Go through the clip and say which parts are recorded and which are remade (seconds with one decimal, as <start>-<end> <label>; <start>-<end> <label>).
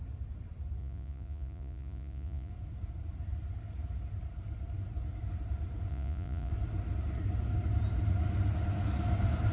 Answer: 0.0-0.8 recorded; 0.8-2.5 remade; 2.5-5.9 recorded; 5.9-6.5 remade; 6.5-9.5 recorded